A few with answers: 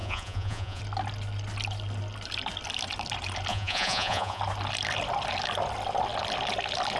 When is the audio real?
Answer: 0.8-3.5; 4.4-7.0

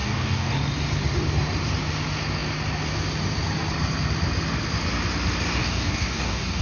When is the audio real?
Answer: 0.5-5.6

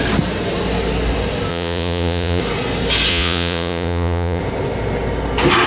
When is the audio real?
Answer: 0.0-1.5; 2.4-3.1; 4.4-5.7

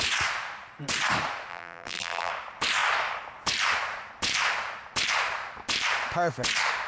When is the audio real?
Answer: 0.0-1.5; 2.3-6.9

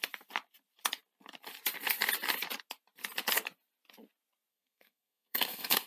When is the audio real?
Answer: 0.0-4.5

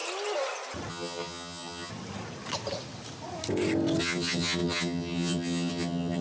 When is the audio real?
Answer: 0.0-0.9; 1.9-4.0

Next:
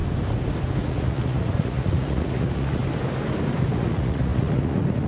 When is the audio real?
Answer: 0.0-0.8; 2.8-3.7

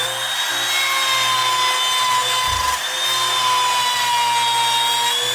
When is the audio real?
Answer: 0.0-5.3